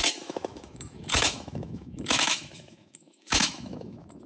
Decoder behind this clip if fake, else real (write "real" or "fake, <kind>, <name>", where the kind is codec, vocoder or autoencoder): fake, autoencoder, DAC-VAE